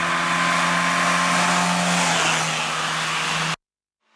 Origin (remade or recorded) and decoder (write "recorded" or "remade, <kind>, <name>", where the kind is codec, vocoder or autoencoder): recorded